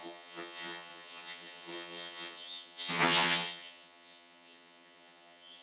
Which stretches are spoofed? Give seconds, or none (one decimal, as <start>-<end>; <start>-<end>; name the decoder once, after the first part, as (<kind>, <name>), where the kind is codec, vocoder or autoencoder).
0.0-5.6 (vocoder, HiFi-GAN)